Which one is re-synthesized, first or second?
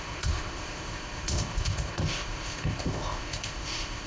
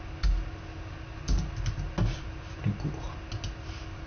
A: first